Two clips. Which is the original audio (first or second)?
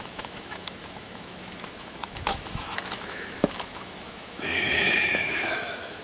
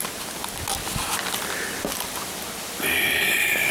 second